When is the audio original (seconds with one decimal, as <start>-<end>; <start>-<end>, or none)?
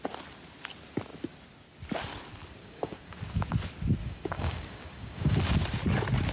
0.0-2.6; 3.2-4.0; 5.4-6.3